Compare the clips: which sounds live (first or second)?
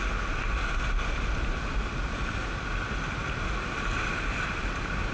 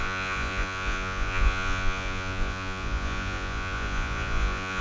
first